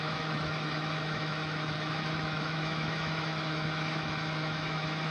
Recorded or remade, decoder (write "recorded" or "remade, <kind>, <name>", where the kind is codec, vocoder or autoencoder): remade, autoencoder, DAC-VAE